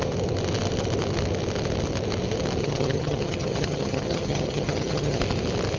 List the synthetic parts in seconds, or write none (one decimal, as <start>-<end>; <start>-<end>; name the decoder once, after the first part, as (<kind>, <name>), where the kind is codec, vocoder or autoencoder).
2.6-5.2 (vocoder, HiFi-GAN)